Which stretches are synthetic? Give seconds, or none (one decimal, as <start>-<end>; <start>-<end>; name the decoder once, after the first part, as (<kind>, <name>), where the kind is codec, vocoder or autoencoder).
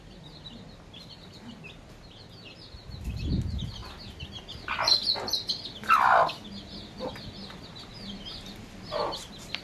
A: none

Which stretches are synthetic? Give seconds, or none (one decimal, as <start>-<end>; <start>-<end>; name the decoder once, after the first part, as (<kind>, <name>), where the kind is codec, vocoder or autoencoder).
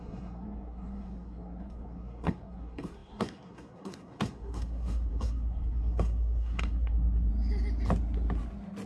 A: 0.0-7.3 (codec, SNAC)